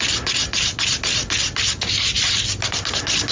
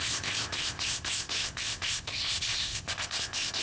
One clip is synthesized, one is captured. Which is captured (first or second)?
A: first